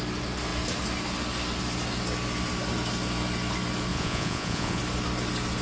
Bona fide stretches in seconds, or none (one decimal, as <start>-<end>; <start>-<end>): 0.0-3.9; 4.8-5.6